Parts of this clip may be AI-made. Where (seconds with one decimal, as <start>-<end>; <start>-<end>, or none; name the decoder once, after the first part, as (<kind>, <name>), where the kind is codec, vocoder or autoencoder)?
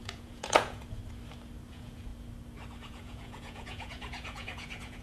0.0-1.0 (vocoder, Vocos); 1.7-2.1; 2.8-5.0